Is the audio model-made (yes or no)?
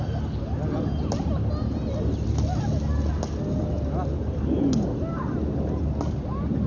no